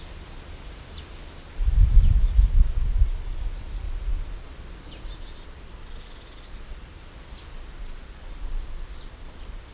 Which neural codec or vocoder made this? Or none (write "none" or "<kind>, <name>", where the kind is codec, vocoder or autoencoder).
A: none